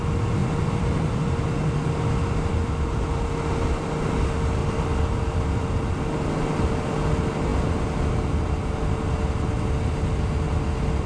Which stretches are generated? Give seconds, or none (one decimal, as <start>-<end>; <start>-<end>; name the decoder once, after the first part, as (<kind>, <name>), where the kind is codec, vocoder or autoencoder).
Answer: 0.4-1.2 (vocoder, BigVGAN v2); 4.6-5.7